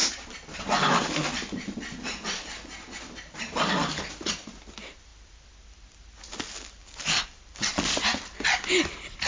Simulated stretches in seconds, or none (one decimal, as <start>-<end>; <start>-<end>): 0.0-0.6